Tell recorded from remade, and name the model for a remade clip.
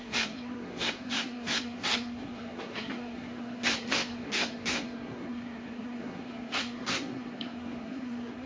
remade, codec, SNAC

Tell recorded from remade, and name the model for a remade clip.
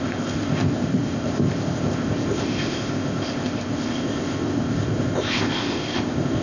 remade, codec, ZipCodec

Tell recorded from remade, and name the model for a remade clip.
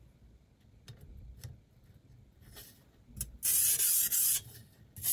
recorded